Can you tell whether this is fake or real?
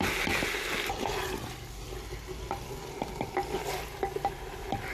real